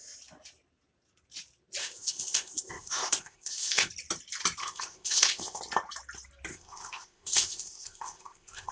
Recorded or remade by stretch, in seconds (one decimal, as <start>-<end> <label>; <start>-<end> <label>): 0.0-1.8 recorded; 1.8-3.9 remade; 3.9-4.6 recorded; 4.6-5.6 remade; 5.6-6.5 recorded; 6.5-8.7 remade